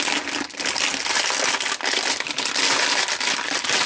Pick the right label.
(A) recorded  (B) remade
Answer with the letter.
A